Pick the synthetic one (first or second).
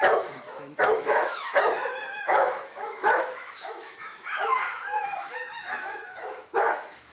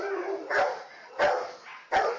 first